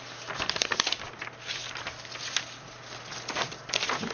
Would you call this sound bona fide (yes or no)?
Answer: yes